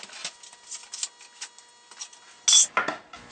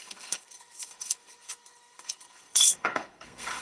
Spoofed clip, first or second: second